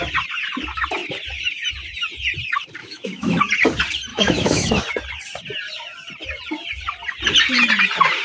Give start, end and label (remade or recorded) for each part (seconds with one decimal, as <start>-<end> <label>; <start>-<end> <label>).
0.0-2.8 recorded; 2.8-3.4 remade; 3.4-4.1 recorded; 4.1-4.8 remade; 4.8-8.2 recorded